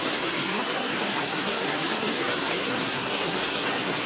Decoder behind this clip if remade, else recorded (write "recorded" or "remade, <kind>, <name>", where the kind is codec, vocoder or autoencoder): remade, codec, SNAC